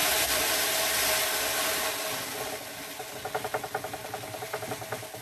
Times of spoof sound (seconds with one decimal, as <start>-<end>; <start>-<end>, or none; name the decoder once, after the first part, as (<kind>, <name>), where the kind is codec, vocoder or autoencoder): 0.0-3.1 (vocoder, BigVGAN v2)